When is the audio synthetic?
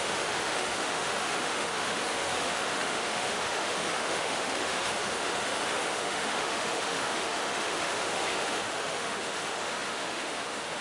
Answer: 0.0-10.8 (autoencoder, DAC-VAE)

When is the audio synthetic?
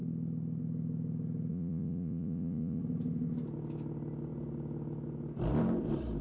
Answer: 1.5-2.8 (vocoder, Vocos)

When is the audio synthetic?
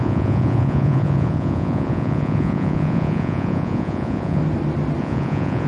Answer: 0.0-4.4 (vocoder, Vocos); 5.0-5.7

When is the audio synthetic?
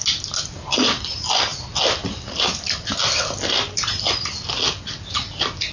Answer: none